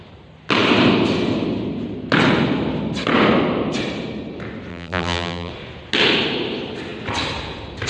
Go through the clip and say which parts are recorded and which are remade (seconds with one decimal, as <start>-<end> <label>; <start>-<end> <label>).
0.0-4.7 recorded; 4.7-5.5 remade; 5.5-7.9 recorded